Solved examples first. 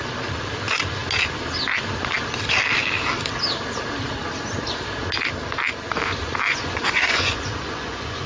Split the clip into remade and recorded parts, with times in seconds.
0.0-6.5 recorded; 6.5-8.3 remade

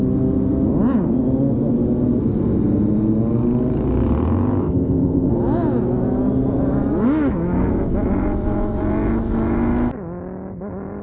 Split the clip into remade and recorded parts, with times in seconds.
0.0-4.6 recorded; 4.6-5.3 remade; 5.3-11.0 recorded

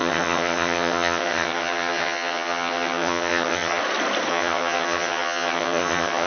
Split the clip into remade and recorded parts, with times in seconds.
0.0-3.8 remade; 3.8-4.3 recorded; 4.3-6.3 remade

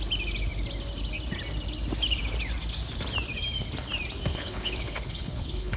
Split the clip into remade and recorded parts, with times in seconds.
0.0-4.3 recorded; 4.3-5.8 remade

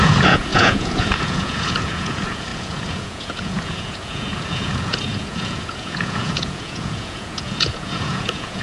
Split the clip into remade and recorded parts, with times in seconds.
0.0-8.6 remade

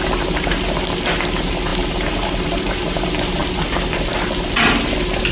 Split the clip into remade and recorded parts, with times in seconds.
0.0-5.3 recorded

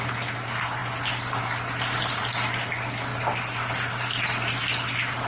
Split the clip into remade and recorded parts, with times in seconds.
0.0-5.3 recorded

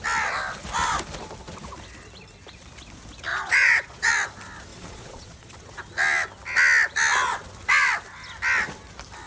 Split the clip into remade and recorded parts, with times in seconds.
0.0-3.3 recorded; 3.3-4.1 remade; 4.1-4.7 recorded; 4.7-5.7 remade; 5.7-9.3 recorded